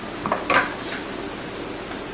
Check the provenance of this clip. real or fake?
real